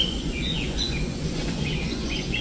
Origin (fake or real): fake